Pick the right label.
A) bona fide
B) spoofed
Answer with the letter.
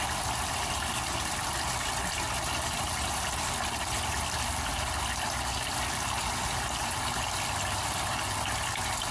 A